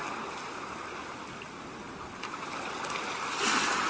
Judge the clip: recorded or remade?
recorded